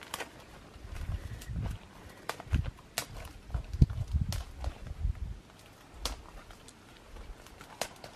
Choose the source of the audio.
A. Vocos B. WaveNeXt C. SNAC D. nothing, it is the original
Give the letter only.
D